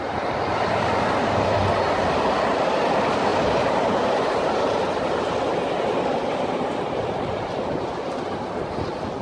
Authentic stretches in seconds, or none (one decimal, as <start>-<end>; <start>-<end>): 0.0-3.3; 4.8-9.2